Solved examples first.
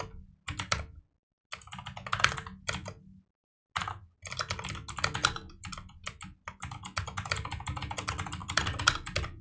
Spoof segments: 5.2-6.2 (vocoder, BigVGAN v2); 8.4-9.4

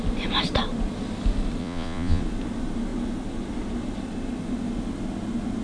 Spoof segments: 1.6-2.2 (vocoder, Vocos)

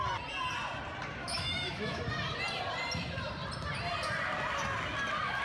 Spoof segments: 1.2-2.0 (autoencoder, DAC-VAE)

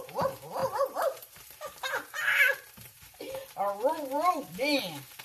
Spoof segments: 0.0-5.2 (vocoder, BigVGAN v2)

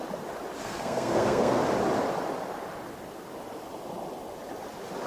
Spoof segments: 0.6-1.6 (codec, SNAC)